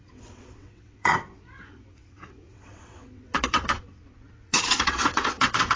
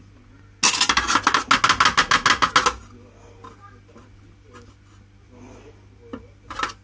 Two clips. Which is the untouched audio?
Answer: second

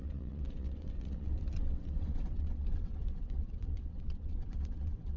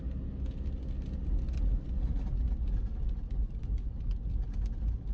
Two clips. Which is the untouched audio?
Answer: second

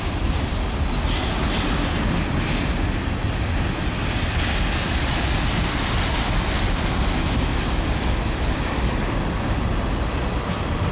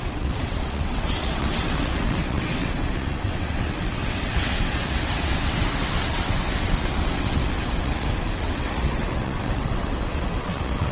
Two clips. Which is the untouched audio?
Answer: first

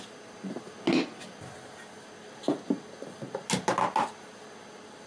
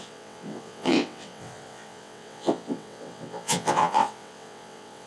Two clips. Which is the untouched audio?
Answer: first